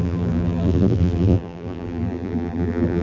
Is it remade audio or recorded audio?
remade